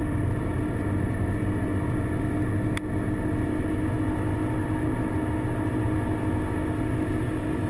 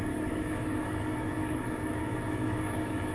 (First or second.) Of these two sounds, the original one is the first